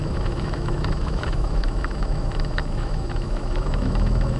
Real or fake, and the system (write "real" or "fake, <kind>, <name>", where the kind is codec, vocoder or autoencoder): fake, autoencoder, DAC-VAE